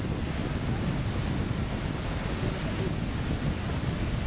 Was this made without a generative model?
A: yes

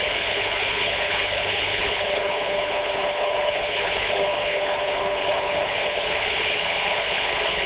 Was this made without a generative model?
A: no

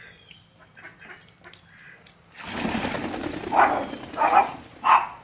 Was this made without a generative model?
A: yes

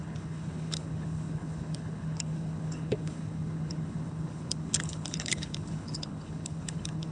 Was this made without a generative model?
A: no